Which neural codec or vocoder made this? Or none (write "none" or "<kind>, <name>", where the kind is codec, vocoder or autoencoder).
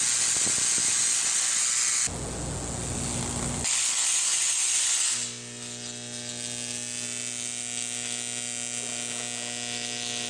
none